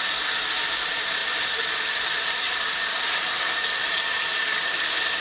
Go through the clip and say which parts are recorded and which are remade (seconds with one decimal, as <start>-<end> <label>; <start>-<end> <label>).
0.0-1.2 recorded; 1.2-3.8 remade; 3.8-5.2 recorded